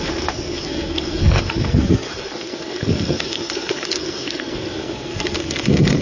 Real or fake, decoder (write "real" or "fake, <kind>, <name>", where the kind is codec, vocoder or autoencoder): fake, codec, SNAC